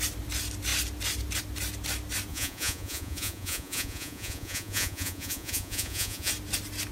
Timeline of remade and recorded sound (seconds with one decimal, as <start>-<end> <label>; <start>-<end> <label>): 0.0-2.3 recorded; 2.3-6.3 remade; 6.3-6.9 recorded